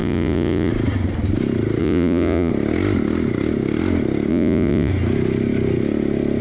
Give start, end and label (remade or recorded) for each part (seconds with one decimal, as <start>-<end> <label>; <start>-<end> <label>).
0.0-0.7 remade; 0.7-1.8 recorded; 1.8-2.5 remade; 2.5-4.3 recorded; 4.3-4.9 remade; 4.9-6.4 recorded